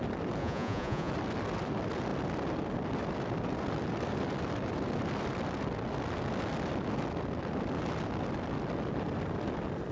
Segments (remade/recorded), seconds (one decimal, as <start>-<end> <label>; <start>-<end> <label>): 0.0-0.4 recorded; 0.4-1.1 remade; 1.1-9.9 recorded